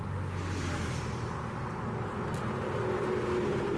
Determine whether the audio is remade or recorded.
recorded